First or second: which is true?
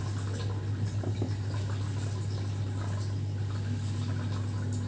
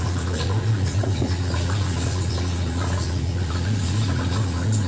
first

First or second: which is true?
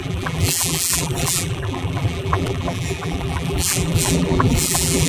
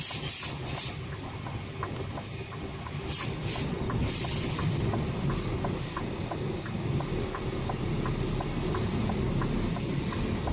second